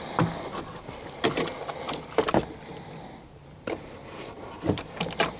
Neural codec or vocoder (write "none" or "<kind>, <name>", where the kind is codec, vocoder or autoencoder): none